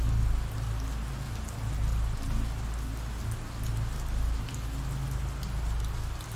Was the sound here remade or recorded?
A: recorded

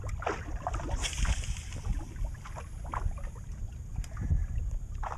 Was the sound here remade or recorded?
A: recorded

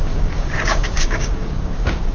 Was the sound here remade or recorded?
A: remade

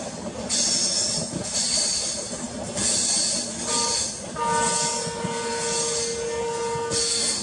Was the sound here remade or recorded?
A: recorded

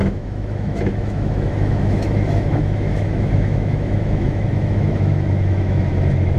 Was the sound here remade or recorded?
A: remade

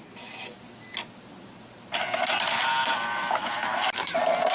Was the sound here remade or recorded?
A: recorded